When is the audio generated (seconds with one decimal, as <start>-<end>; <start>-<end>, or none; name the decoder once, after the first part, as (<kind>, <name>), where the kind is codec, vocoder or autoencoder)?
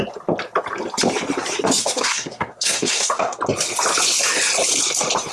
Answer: 1.8-3.4 (codec, SNAC)